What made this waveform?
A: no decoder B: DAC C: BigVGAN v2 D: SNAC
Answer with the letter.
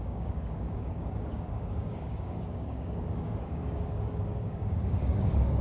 B